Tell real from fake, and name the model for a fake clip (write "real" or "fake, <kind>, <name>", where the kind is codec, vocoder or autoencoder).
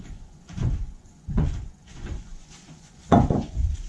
fake, vocoder, Vocos